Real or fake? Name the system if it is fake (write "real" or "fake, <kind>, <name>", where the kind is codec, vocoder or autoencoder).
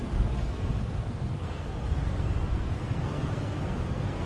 fake, codec, SNAC